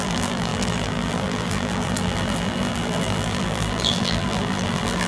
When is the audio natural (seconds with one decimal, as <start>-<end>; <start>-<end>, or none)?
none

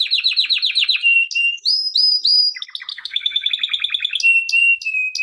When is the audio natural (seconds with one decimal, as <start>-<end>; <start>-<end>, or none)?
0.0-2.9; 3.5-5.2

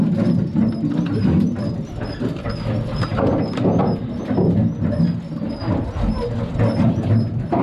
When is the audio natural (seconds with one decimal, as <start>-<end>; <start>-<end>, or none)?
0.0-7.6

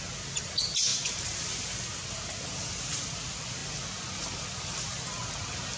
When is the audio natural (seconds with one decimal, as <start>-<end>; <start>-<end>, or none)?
0.0-5.8

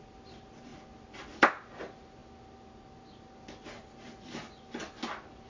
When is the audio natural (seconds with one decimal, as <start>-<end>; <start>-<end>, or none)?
0.0-5.5

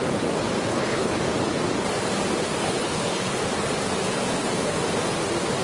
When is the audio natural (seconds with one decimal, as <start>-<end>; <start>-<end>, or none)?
0.0-0.7; 1.2-2.6; 3.4-5.6

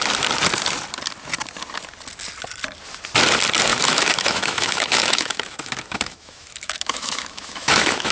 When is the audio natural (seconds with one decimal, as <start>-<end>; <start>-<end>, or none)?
0.0-3.7